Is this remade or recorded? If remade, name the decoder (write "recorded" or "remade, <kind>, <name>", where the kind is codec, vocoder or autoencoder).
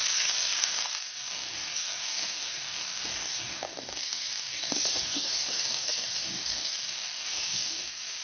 remade, codec, DAC